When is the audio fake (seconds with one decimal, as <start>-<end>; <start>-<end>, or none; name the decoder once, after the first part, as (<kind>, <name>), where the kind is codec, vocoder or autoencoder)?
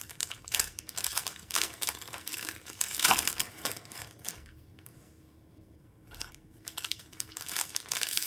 0.0-8.3 (codec, SNAC)